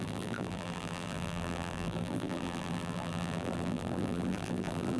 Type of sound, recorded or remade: remade